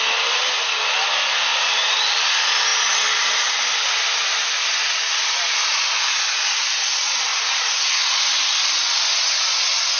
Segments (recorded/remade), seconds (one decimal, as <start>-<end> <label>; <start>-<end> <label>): 0.0-7.3 recorded; 7.3-7.9 remade; 7.9-10.0 recorded